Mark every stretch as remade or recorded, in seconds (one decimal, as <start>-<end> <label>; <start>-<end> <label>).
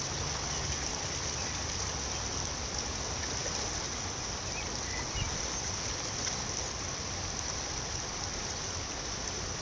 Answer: 0.0-9.6 recorded